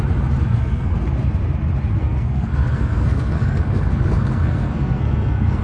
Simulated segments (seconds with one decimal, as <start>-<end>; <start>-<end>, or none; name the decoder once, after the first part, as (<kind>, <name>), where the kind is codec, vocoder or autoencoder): 0.4-0.9 (codec, SNAC); 2.0-5.6